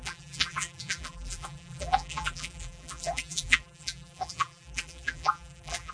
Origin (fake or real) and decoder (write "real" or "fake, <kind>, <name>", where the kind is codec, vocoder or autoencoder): fake, vocoder, BigVGAN v2